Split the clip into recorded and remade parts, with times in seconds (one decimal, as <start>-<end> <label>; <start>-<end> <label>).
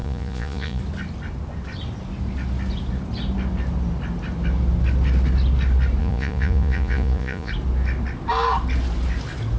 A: 0.0-0.8 remade; 0.8-6.0 recorded; 6.0-7.5 remade; 7.5-9.6 recorded